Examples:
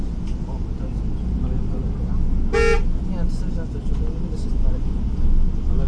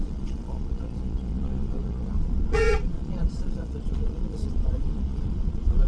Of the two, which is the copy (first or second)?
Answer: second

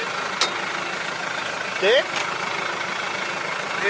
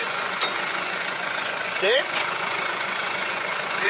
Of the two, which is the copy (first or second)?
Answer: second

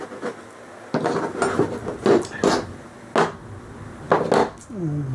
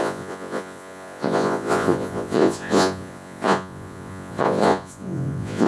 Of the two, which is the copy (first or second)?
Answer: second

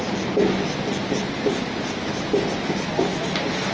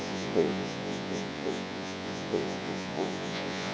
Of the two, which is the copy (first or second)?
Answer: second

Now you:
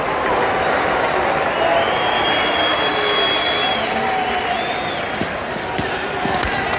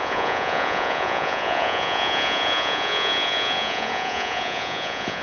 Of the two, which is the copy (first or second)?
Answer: second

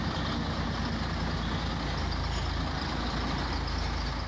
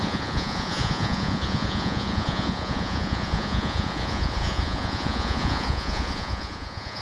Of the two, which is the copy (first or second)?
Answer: second